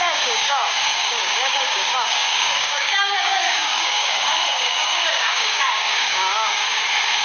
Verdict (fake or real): fake